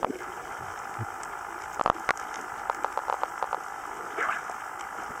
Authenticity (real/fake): fake